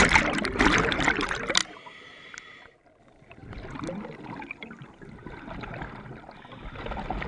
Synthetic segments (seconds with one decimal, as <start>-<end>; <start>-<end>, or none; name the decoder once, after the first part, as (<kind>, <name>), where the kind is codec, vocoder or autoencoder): none